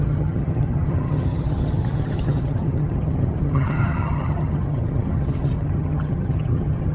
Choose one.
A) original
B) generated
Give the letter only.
B